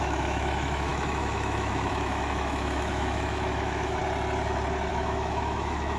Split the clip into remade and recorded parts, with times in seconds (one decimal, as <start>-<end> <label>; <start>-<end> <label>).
0.0-4.0 remade; 4.0-4.9 recorded; 4.9-6.0 remade